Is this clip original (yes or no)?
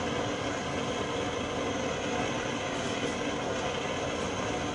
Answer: yes